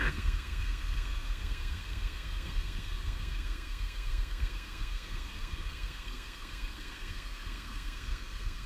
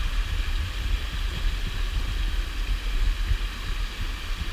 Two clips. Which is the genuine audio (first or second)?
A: second